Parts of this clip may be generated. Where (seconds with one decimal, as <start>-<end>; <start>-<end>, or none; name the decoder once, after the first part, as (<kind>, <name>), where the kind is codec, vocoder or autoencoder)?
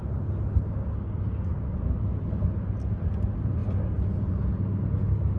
none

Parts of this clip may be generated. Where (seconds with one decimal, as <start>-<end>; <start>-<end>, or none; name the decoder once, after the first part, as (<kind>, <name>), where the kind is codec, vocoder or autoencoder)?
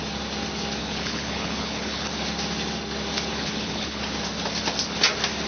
0.8-2.1 (codec, HILCodec); 3.3-4.0